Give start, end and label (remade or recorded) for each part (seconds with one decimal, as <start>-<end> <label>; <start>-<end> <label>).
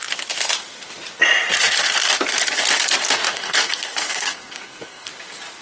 0.0-3.3 recorded; 3.3-5.1 remade; 5.1-5.6 recorded